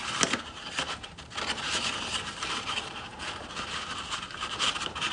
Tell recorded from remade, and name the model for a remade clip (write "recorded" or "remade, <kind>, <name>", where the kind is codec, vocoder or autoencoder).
recorded